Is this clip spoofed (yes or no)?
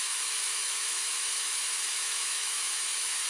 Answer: yes